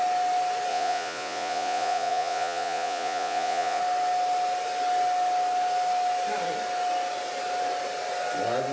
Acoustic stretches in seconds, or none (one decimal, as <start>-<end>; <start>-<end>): 0.0-0.7; 3.8-8.7